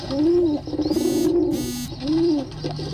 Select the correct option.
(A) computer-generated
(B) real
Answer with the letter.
B